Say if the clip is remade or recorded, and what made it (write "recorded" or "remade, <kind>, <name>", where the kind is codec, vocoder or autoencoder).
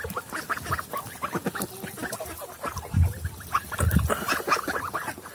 recorded